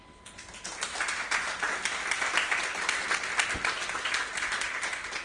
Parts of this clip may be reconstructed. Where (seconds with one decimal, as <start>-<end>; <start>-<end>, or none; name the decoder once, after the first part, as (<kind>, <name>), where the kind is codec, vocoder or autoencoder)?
none